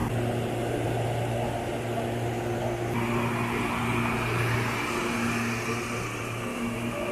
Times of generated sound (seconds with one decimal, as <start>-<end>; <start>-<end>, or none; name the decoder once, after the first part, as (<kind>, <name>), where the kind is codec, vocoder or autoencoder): 6.5-7.1 (autoencoder, DAC-VAE)